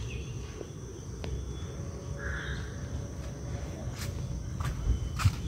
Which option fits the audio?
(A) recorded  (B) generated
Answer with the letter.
A